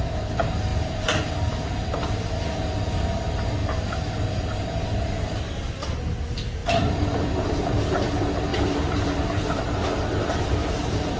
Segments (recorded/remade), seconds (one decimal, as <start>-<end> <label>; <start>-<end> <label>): 0.0-0.7 recorded; 0.7-2.3 remade; 2.3-6.6 recorded; 6.6-7.6 remade; 7.6-8.5 recorded; 8.5-11.2 remade